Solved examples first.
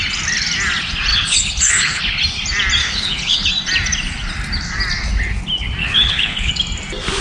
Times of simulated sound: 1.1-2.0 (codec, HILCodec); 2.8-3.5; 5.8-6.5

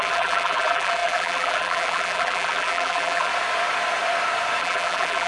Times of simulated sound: 0.0-3.3 (vocoder, BigVGAN v2); 4.6-5.3

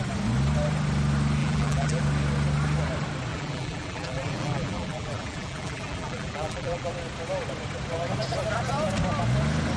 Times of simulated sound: 1.4-2.0 (vocoder, BigVGAN v2); 3.3-6.9

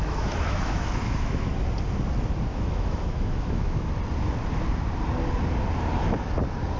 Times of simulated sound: 0.0-1.5 (autoencoder, DAC-VAE); 2.5-3.9

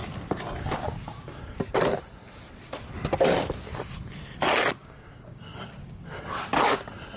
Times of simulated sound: 4.8-6.2 (codec, DAC)

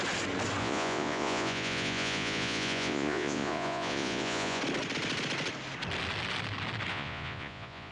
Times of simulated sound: 0.6-4.6 (vocoder, Vocos); 6.9-7.9